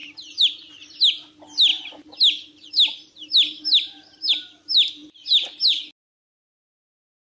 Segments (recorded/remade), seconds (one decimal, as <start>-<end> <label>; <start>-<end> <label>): 0.0-1.0 remade; 1.0-7.3 recorded